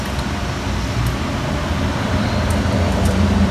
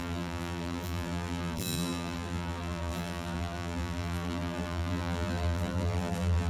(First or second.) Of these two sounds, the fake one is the second